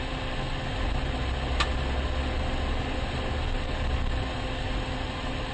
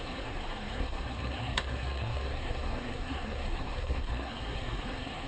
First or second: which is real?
first